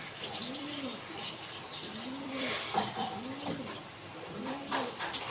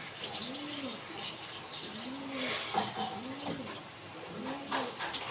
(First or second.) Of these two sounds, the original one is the second